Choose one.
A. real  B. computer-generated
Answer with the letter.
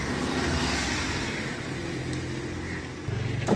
A